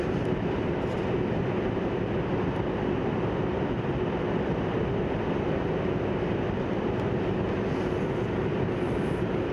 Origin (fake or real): real